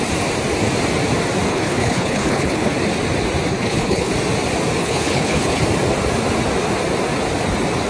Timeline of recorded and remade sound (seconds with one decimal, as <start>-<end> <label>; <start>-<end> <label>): 0.0-1.5 recorded; 1.5-2.7 remade; 2.7-3.5 recorded; 3.5-4.1 remade; 4.1-4.8 recorded; 4.8-5.6 remade; 5.6-7.9 recorded